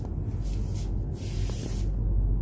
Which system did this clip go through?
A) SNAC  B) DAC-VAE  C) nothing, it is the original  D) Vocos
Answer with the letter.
C